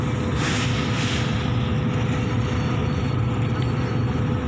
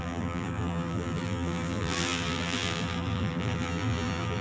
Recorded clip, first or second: first